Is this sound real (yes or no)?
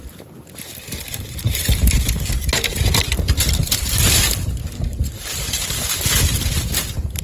no